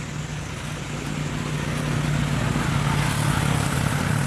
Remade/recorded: recorded